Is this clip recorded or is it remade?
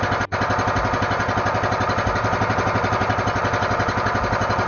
recorded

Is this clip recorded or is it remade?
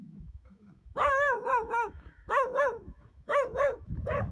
remade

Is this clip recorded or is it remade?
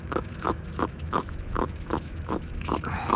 remade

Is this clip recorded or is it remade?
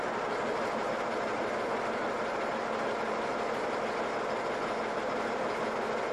recorded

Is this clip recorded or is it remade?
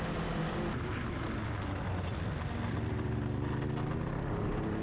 recorded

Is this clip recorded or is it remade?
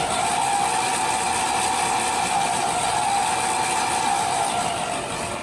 recorded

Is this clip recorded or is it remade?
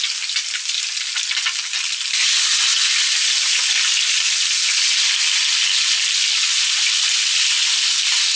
recorded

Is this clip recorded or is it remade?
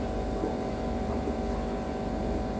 recorded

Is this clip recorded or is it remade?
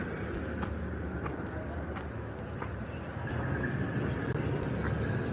recorded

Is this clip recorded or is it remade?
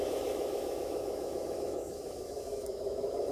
remade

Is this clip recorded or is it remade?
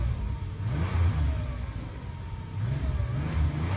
recorded